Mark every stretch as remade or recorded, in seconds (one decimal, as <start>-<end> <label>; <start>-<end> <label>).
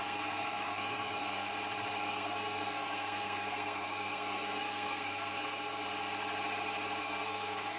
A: 0.0-1.5 remade; 1.5-2.0 recorded; 2.0-5.8 remade; 5.8-7.0 recorded; 7.0-7.8 remade